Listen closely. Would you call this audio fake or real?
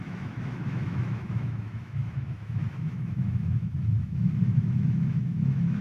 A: fake